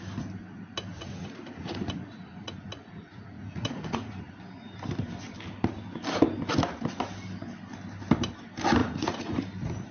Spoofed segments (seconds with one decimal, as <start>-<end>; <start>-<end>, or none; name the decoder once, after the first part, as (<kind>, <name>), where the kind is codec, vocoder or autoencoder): 0.9-4.3 (vocoder, Vocos); 8.8-9.4